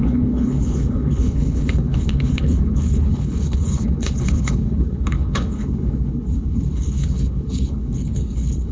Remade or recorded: remade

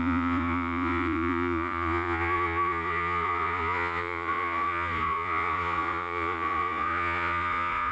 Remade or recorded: remade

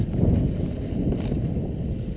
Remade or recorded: recorded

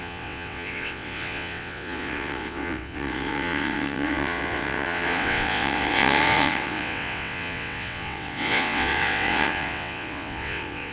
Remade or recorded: remade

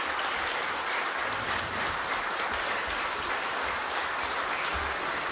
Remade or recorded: recorded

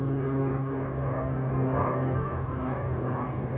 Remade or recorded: remade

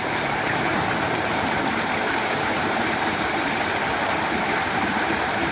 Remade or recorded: remade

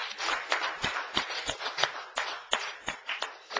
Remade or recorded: recorded